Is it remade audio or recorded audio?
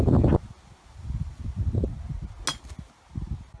recorded